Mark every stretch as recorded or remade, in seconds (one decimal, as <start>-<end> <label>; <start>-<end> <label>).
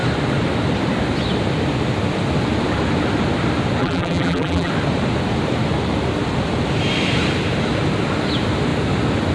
0.0-3.8 recorded; 3.8-4.7 remade; 4.7-9.3 recorded